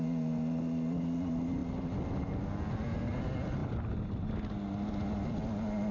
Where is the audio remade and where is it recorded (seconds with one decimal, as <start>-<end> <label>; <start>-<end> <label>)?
0.0-5.9 recorded